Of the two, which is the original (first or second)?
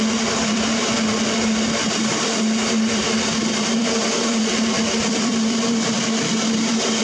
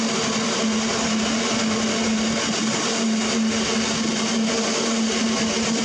second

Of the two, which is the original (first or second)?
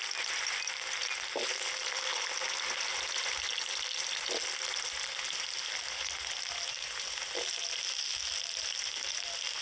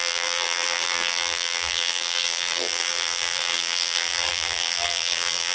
first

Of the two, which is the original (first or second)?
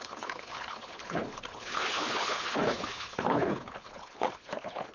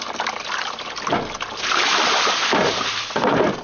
second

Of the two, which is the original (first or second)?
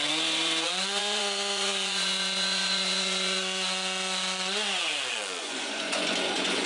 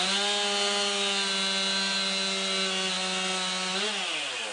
second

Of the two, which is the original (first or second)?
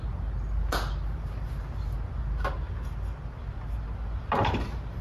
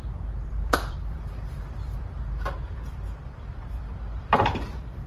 first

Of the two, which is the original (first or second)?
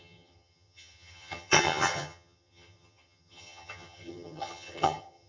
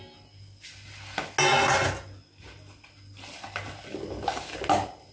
second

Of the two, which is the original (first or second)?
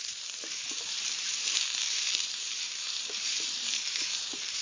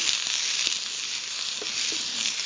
second